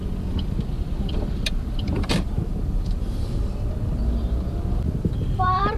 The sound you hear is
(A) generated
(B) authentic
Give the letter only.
A